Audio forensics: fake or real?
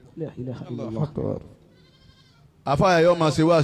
real